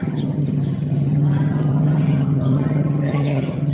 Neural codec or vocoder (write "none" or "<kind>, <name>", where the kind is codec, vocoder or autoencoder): vocoder, HiFi-GAN